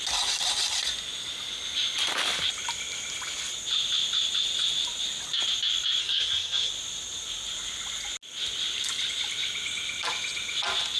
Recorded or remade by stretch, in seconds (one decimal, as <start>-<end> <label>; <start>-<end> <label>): 0.0-6.0 recorded; 6.0-6.7 remade; 6.7-11.0 recorded